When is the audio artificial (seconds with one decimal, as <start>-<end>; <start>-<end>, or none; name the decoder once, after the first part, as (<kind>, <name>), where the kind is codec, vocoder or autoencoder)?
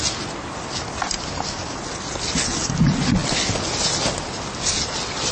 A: none